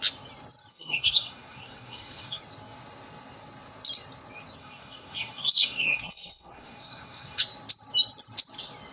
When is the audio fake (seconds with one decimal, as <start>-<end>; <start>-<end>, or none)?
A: 0.7-2.4; 4.6-7.4